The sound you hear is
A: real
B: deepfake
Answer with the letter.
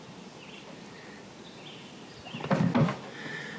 A